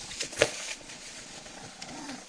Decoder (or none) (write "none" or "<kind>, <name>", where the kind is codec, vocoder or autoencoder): vocoder, Vocos